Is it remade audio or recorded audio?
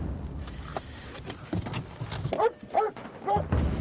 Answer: recorded